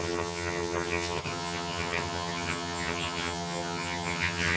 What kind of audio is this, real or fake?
fake